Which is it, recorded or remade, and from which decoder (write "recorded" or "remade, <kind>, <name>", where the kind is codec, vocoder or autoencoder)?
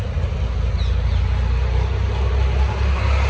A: recorded